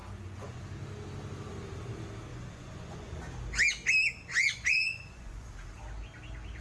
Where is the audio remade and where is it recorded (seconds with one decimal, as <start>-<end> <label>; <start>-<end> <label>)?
0.0-0.6 remade; 0.6-2.3 recorded; 2.3-3.2 remade; 3.2-4.3 recorded; 4.3-5.5 remade; 5.5-6.6 recorded